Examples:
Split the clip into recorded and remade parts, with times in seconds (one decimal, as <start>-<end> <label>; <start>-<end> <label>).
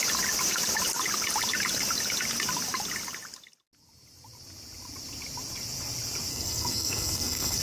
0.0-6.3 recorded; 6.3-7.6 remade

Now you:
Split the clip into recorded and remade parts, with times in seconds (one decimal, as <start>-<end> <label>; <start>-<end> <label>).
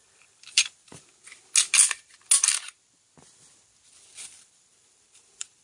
0.0-0.9 remade; 0.9-4.3 recorded; 4.3-5.6 remade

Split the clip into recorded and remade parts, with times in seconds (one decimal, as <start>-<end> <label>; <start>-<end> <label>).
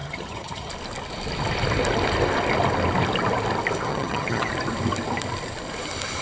0.0-0.7 remade; 0.7-3.9 recorded; 3.9-4.5 remade; 4.5-6.2 recorded